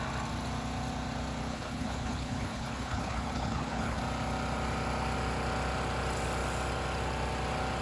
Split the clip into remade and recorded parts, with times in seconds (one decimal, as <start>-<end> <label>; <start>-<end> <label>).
0.0-1.5 recorded; 1.5-4.0 remade; 4.0-7.8 recorded